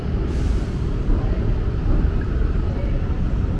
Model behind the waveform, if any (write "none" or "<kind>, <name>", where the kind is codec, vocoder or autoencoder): vocoder, BigVGAN v2